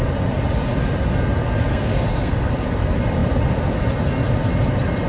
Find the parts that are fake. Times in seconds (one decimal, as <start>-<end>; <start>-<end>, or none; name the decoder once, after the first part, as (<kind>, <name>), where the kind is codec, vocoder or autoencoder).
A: 1.7-2.5 (codec, SNAC)